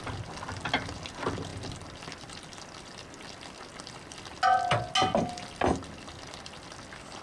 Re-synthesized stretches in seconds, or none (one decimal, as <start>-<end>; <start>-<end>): none